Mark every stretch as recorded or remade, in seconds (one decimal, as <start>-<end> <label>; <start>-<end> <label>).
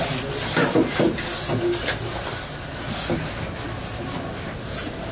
0.0-3.8 recorded; 3.8-4.3 remade; 4.3-5.1 recorded